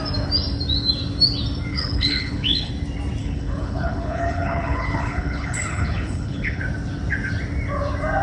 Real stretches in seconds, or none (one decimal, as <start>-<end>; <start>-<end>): 0.0-1.7; 2.7-3.2; 6.6-8.2

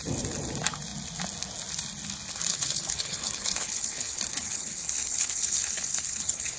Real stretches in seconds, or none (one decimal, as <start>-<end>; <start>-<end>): 0.0-2.5

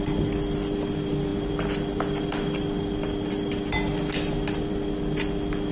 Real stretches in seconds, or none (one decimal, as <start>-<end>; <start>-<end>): 0.0-5.7

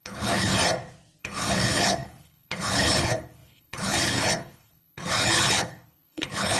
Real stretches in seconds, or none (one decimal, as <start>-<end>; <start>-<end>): 0.5-1.2

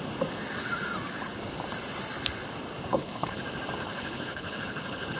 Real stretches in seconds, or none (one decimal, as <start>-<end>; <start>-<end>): 0.0-2.9; 3.4-3.8